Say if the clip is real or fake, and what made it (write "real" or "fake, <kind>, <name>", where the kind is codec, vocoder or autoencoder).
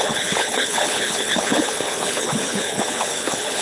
fake, codec, HILCodec